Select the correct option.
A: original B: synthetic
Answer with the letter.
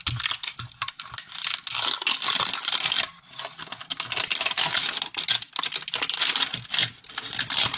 A